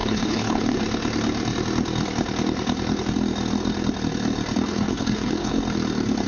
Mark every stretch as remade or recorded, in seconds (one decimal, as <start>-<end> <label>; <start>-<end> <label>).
0.0-0.8 remade; 0.8-4.7 recorded; 4.7-5.6 remade; 5.6-6.3 recorded